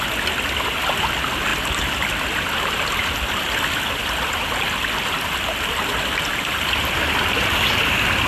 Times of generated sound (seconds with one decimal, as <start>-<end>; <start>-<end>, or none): none